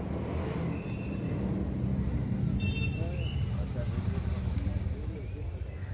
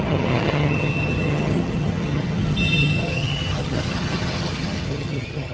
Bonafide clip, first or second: first